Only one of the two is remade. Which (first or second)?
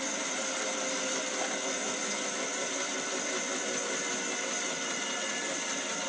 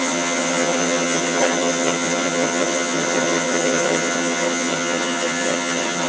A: second